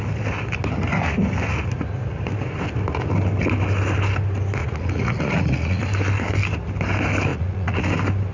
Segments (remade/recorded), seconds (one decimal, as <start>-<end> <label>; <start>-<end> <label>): 0.0-4.6 recorded; 4.6-5.8 remade; 5.8-7.3 recorded; 7.3-7.9 remade; 7.9-8.3 recorded